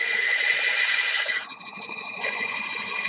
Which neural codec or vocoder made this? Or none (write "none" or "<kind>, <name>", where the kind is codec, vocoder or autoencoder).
vocoder, Vocos